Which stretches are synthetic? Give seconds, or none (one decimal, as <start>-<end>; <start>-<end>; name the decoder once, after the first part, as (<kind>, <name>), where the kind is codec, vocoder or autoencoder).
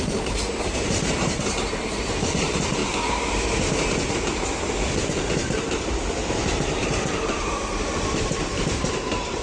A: 0.0-2.8 (vocoder, BigVGAN v2); 4.1-9.4